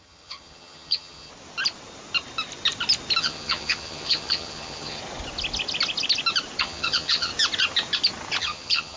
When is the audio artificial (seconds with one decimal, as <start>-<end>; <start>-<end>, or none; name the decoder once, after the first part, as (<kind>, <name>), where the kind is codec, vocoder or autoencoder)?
0.0-1.3 (vocoder, HiFi-GAN); 3.2-5.0; 6.6-7.3; 8.4-9.0